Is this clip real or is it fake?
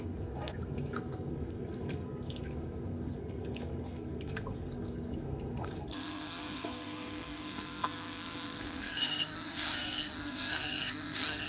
fake